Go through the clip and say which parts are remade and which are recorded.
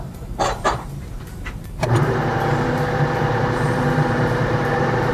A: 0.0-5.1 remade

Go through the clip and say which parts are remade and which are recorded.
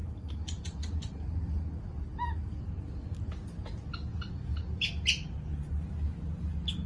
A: 0.0-6.9 recorded